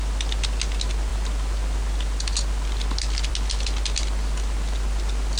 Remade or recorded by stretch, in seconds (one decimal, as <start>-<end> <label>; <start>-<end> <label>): 0.0-5.4 recorded